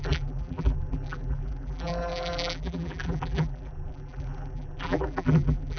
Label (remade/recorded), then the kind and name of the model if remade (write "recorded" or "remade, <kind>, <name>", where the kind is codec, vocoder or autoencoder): remade, vocoder, BigVGAN v2